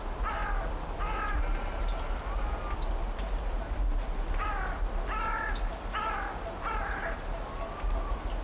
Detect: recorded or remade recorded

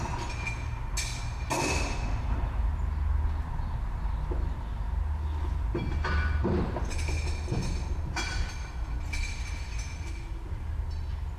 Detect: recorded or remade recorded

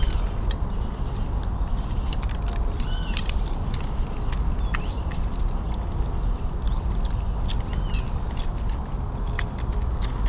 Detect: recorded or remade recorded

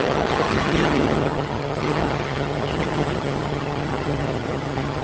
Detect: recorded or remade remade